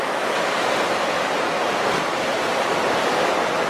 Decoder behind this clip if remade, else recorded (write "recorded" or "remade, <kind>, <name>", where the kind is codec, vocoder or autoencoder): recorded